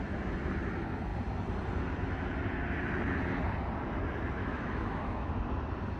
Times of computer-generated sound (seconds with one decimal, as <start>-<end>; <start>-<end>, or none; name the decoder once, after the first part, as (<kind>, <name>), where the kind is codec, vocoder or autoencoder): 4.4-5.3 (autoencoder, DAC-VAE)